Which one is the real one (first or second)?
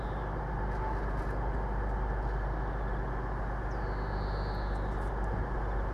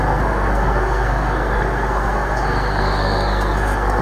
first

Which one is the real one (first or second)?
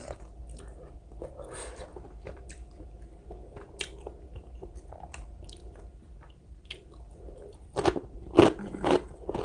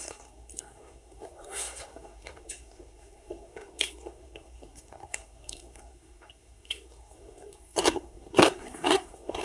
first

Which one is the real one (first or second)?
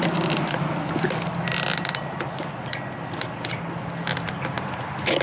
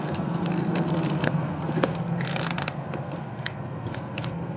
first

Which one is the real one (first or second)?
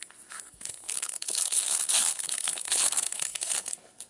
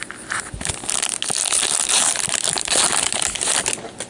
second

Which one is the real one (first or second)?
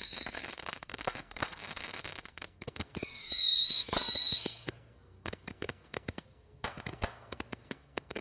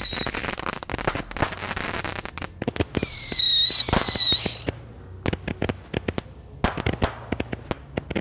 second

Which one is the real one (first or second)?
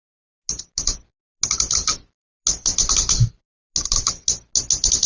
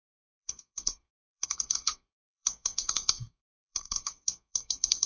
first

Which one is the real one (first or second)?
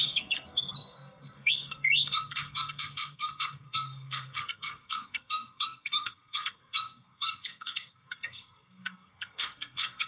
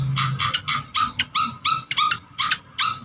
second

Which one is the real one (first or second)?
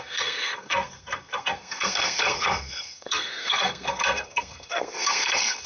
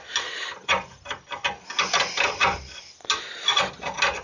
second